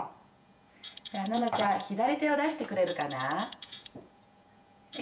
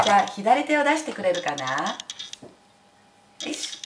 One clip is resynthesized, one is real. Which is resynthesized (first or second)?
first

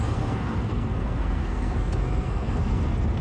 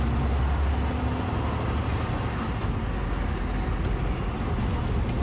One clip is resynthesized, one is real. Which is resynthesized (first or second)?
first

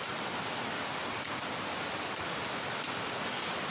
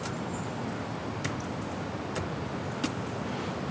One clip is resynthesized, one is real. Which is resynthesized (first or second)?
first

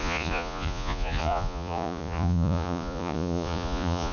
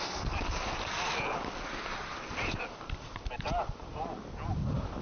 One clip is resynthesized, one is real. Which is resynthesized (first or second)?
first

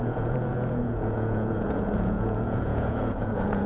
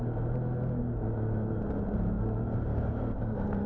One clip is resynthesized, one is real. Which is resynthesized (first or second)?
first